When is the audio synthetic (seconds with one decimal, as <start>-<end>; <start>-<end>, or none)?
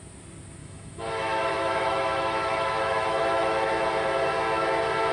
0.6-3.7